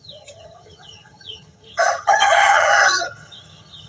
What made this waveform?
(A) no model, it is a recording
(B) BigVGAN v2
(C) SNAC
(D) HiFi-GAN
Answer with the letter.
D